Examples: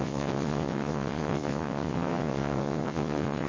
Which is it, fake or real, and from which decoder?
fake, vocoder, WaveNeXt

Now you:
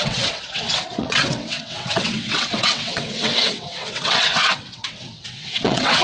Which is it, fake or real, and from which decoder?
fake, vocoder, WaveNeXt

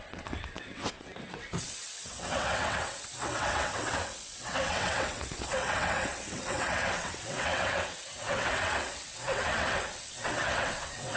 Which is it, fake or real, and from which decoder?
fake, vocoder, WaveNeXt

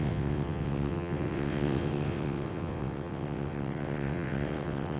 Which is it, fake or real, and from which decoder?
fake, vocoder, WaveNeXt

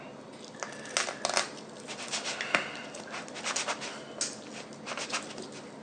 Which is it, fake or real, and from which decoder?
real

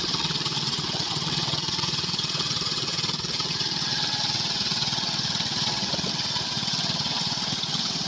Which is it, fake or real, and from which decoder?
fake, vocoder, WaveNeXt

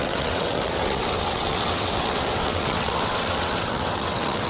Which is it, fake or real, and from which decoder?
fake, vocoder, WaveNeXt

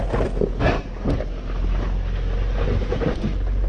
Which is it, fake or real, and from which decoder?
real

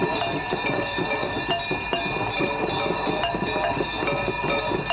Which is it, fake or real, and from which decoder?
real